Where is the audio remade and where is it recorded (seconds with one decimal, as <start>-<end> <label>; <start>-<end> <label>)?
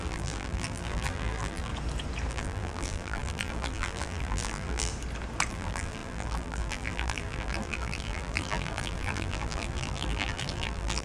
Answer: 0.0-1.7 remade; 1.7-2.3 recorded; 2.3-4.9 remade; 4.9-5.5 recorded; 5.5-11.0 remade